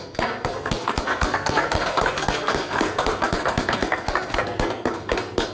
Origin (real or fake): fake